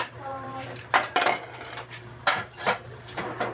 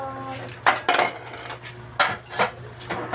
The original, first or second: second